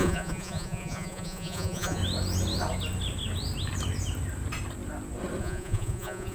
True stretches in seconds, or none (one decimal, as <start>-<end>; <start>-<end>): 2.0-5.4

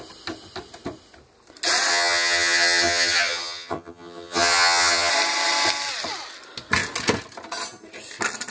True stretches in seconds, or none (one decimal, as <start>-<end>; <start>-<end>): 0.0-1.9; 5.1-8.5

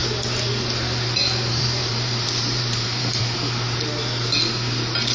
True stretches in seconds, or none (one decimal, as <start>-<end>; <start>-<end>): 0.0-1.8; 3.2-5.1

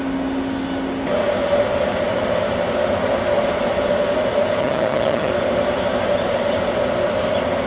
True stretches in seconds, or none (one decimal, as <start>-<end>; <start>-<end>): 0.0-4.6; 5.3-7.7

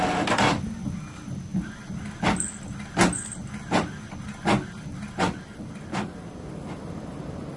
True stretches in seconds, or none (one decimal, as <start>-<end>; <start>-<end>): 0.0-7.6

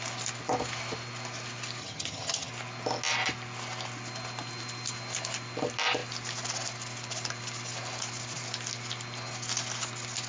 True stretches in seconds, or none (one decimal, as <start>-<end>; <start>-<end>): 0.0-1.8; 2.5-10.3

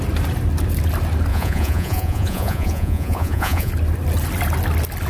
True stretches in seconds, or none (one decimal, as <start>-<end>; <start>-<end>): 0.0-1.3; 3.7-5.1